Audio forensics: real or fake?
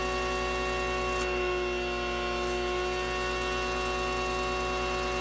real